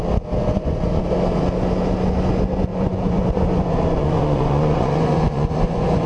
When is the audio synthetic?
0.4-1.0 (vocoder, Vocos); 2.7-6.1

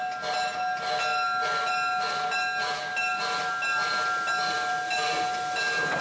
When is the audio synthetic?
none

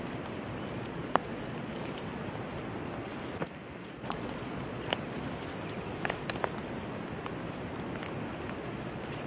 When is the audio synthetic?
0.7-1.8 (vocoder, Vocos); 3.8-4.9; 8.6-9.3

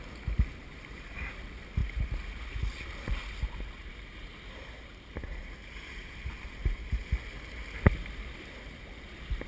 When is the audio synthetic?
none

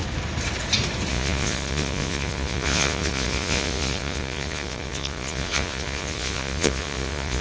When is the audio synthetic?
1.1-7.4 (vocoder, Vocos)

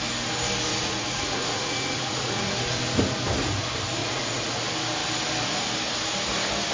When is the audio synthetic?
0.7-2.5 (vocoder, Vocos); 4.0-4.6

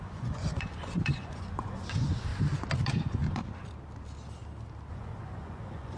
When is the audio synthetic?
0.0-2.3 (vocoder, Vocos); 3.0-3.4; 4.9-6.0